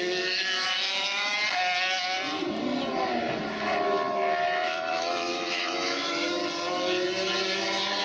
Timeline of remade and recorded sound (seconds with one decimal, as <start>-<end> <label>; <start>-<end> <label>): 0.0-1.3 remade; 1.3-4.1 recorded; 4.1-6.4 remade; 6.4-8.0 recorded